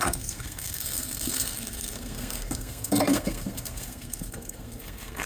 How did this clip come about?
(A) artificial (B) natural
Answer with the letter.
A